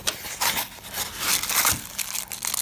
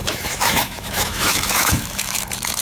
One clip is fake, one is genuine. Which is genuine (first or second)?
first